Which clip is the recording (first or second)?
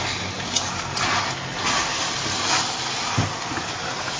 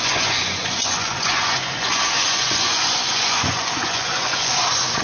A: first